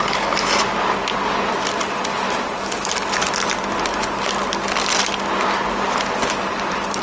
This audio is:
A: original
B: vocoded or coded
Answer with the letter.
A